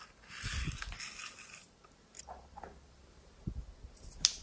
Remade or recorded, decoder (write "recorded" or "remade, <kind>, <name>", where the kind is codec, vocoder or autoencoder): recorded